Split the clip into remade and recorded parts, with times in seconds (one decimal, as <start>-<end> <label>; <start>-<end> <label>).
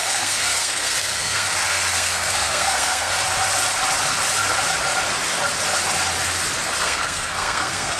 0.0-3.1 remade; 3.1-6.8 recorded; 6.8-8.0 remade